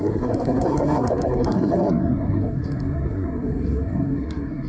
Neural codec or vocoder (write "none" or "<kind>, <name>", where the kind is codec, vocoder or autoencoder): codec, SNAC